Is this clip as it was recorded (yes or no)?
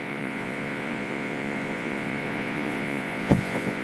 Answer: no